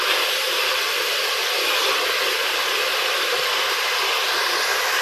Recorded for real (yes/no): no